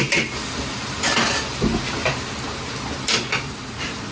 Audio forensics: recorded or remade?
recorded